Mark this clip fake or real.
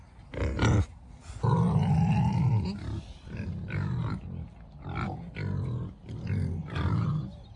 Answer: real